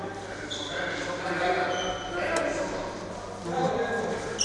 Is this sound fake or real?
fake